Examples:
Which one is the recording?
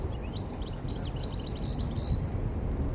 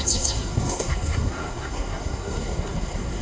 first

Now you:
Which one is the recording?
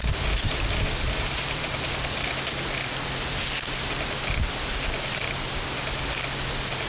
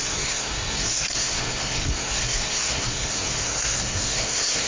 first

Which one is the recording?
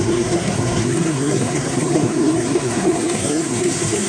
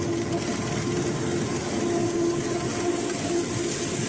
second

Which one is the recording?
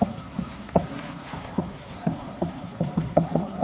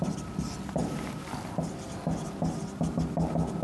second